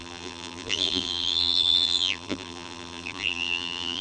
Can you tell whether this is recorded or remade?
remade